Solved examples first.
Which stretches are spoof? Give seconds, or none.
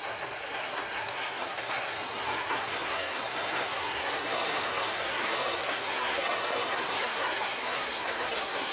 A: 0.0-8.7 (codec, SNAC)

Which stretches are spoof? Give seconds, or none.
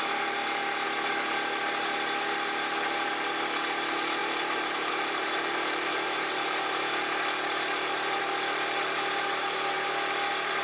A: 4.2-6.8 (vocoder, BigVGAN v2)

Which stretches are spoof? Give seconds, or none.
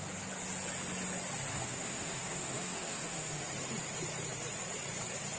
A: 1.5-3.4 (autoencoder, DAC-VAE)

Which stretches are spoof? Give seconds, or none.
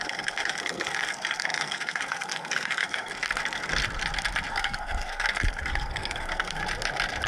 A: 0.0-3.8 (codec, SNAC); 4.5-6.6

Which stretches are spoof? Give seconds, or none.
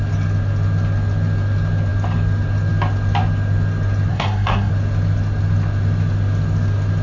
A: 4.1-4.7 (codec, SNAC)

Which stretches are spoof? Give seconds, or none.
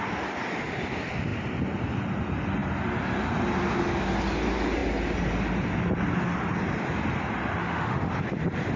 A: 7.6-8.1 (autoencoder, DAC-VAE)